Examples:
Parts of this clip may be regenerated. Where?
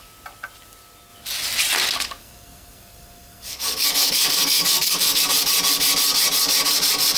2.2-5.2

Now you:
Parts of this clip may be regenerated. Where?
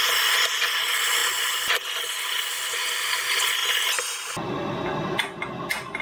none